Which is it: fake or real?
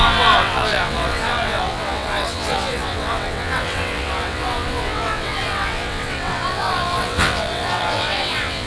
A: fake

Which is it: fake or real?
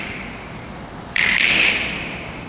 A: real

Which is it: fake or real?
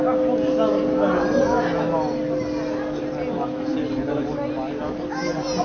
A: real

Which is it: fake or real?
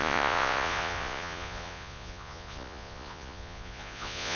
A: fake